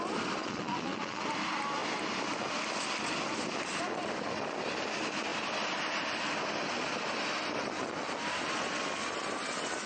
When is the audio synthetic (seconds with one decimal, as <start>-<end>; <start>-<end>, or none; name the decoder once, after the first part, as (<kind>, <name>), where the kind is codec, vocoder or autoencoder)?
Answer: 0.4-1.2 (vocoder, Vocos)